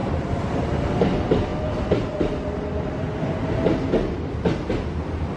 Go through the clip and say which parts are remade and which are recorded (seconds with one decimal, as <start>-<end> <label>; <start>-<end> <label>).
0.0-0.9 remade; 0.9-5.4 recorded